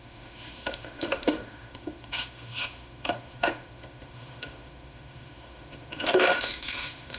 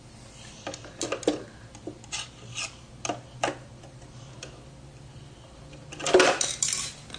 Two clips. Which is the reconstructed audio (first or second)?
first